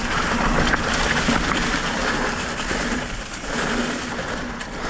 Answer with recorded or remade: recorded